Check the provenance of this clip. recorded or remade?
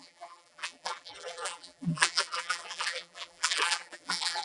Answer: remade